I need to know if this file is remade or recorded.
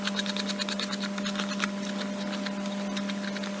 recorded